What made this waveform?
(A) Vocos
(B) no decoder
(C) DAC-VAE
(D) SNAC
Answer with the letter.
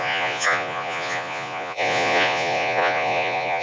A